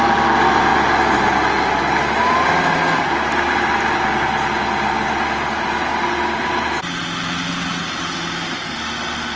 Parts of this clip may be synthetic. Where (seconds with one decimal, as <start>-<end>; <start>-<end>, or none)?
none